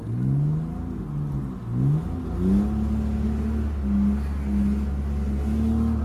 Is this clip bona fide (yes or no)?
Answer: yes